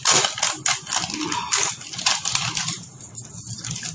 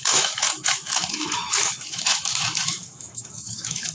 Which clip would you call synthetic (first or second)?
second